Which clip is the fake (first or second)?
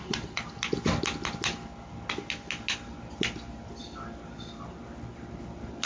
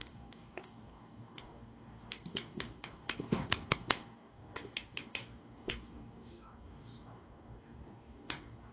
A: second